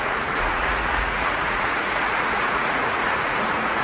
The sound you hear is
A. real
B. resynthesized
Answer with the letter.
B